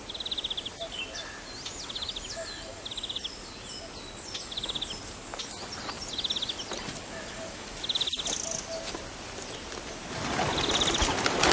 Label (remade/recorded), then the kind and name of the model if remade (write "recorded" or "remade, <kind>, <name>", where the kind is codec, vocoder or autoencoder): recorded